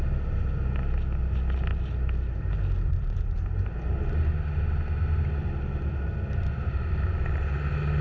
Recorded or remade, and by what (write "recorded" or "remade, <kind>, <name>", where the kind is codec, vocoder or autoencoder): recorded